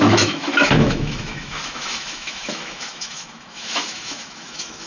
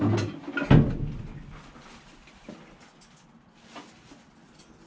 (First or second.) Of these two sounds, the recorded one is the second